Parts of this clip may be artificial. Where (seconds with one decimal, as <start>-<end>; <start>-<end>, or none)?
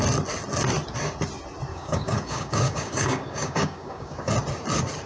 1.7-4.3